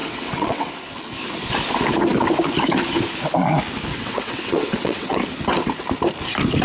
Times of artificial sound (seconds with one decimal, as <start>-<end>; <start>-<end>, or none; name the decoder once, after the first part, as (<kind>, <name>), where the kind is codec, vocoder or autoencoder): 0.0-0.7 (vocoder, WaveNeXt); 3.9-5.2